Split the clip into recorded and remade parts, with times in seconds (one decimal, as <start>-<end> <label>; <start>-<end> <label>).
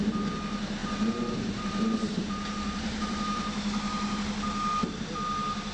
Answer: 0.0-0.8 recorded; 0.8-4.2 remade; 4.2-5.7 recorded